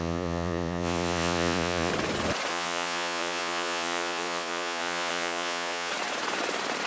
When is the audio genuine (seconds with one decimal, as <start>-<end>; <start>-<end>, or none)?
1.9-2.5; 5.9-6.9